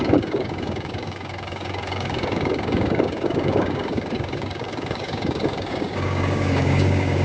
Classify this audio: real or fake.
fake